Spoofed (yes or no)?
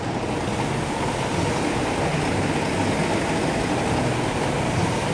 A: no